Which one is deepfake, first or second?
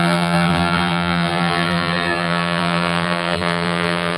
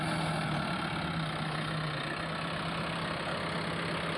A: first